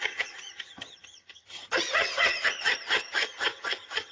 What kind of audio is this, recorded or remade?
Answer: remade